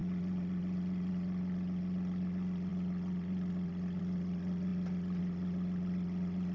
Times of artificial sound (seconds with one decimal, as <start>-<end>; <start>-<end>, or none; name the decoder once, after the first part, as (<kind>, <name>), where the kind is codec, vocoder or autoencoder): none